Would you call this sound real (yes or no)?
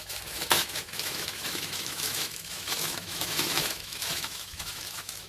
no